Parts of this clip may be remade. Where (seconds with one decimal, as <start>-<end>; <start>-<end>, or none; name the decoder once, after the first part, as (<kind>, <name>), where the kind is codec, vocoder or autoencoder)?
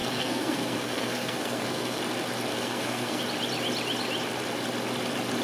0.0-2.0 (codec, SNAC); 2.5-3.2